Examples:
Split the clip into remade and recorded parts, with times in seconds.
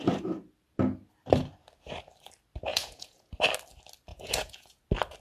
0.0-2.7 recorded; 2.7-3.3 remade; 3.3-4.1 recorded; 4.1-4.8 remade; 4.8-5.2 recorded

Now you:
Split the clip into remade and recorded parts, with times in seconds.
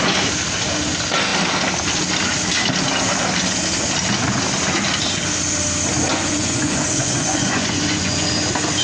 0.0-6.1 recorded; 6.1-8.3 remade; 8.3-8.8 recorded